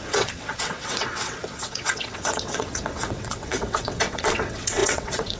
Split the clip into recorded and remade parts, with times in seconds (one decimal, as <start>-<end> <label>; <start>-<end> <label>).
0.0-5.4 remade